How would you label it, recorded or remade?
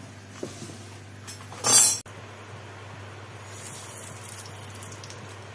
recorded